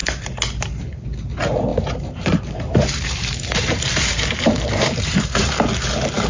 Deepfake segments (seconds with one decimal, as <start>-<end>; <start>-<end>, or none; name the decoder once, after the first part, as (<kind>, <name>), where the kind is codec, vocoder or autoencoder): 0.0-0.8 (vocoder, BigVGAN v2); 1.7-5.5